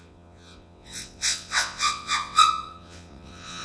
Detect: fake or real fake